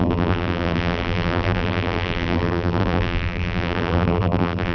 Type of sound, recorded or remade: remade